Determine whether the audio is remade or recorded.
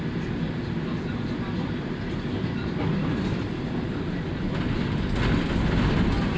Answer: recorded